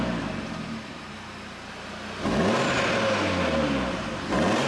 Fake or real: real